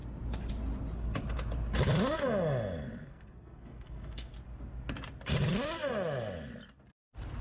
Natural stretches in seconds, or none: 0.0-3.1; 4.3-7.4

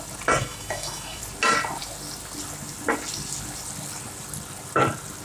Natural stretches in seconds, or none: 0.0-0.4; 1.2-5.2

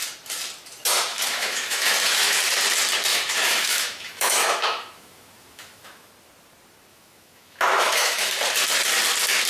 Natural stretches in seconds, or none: 0.0-1.1; 2.4-3.1; 6.1-6.9; 8.3-9.5

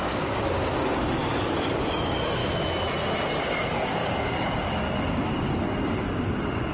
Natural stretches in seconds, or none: 2.4-3.4

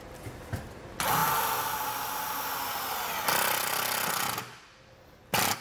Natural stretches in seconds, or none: 0.0-5.6